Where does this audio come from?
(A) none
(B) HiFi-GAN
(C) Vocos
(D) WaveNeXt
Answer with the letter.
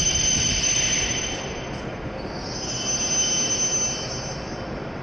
A